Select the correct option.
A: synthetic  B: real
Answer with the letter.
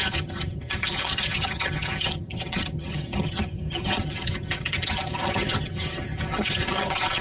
A